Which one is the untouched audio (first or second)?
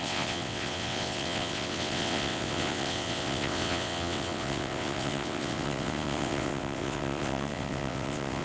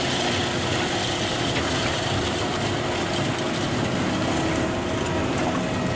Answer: second